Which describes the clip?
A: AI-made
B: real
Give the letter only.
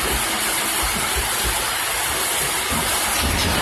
B